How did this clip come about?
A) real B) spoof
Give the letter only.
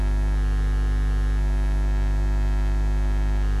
A